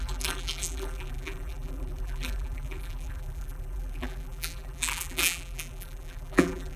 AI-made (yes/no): yes